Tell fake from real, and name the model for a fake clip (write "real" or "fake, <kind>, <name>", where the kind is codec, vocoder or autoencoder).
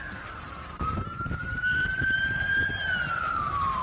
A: fake, vocoder, BigVGAN v2